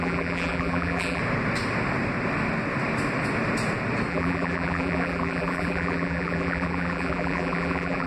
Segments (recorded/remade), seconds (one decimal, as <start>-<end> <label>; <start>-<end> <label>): 0.0-1.2 remade; 1.2-4.1 recorded; 4.1-8.1 remade

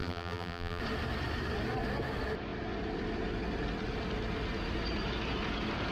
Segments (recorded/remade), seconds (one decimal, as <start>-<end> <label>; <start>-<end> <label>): 0.0-0.8 remade; 0.8-5.9 recorded

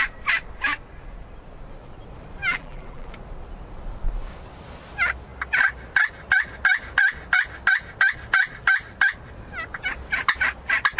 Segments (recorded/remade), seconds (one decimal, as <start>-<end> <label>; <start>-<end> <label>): 0.0-2.4 recorded; 2.4-3.1 remade; 3.1-11.0 recorded

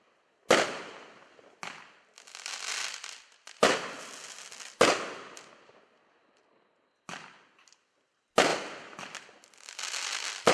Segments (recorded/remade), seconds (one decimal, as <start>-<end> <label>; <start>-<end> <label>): 0.0-10.5 recorded

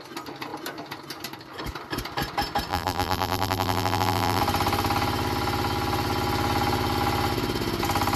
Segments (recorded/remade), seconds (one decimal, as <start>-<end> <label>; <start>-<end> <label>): 0.0-2.7 recorded; 2.7-4.4 remade; 4.4-8.2 recorded